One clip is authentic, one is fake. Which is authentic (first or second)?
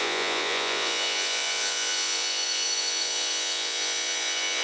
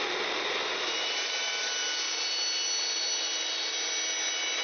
second